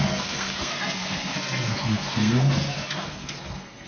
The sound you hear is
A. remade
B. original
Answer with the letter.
A